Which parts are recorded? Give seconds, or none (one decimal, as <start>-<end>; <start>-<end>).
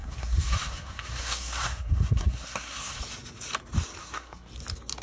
3.0-4.0; 4.5-5.0